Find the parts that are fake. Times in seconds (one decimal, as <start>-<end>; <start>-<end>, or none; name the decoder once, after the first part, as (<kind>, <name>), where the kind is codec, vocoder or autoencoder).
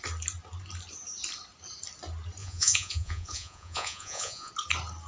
2.4-4.5 (vocoder, Vocos)